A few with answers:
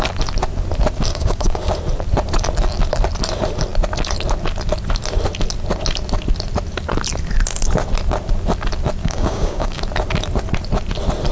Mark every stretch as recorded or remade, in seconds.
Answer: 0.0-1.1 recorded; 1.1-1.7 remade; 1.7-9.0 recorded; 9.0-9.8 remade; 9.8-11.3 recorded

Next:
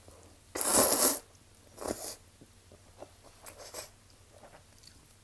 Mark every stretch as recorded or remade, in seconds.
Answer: 0.0-5.2 recorded

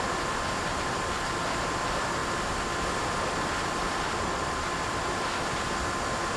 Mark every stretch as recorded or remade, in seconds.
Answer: 0.0-6.4 recorded

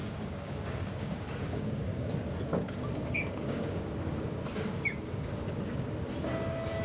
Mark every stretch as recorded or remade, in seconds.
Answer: 0.0-2.1 remade; 2.1-2.5 recorded; 2.5-5.9 remade; 5.9-6.8 recorded

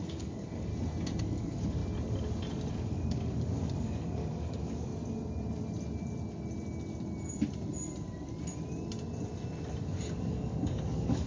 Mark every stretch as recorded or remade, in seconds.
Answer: 0.0-0.7 remade; 0.7-1.2 recorded; 1.2-1.8 remade; 1.8-2.7 recorded; 2.7-4.9 remade; 4.9-9.8 recorded; 9.8-11.3 remade

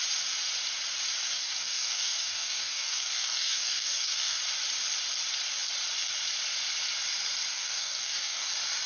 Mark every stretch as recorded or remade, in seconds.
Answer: 0.0-1.3 recorded; 1.3-4.4 remade; 4.4-7.5 recorded; 7.5-8.5 remade; 8.5-8.9 recorded